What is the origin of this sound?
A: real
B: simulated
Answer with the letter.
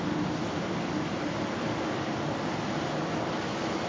A